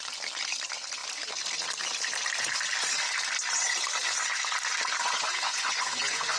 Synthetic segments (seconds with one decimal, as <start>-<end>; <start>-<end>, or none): 5.0-6.4